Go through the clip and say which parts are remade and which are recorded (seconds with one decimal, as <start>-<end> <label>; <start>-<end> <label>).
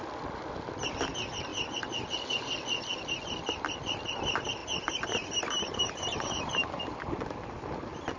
0.0-4.6 recorded; 4.6-6.8 remade; 6.8-8.2 recorded